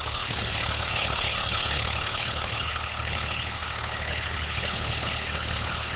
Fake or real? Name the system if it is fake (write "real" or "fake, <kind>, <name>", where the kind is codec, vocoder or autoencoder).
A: fake, codec, HILCodec